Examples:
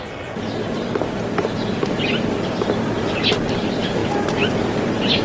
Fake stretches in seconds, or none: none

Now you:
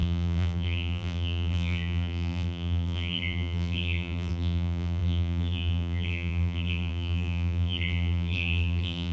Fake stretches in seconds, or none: 0.0-9.1 (vocoder, BigVGAN v2)

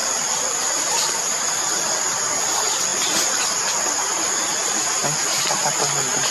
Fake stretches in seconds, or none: 0.0-1.6 (vocoder, BigVGAN v2)